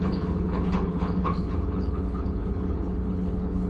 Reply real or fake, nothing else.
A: fake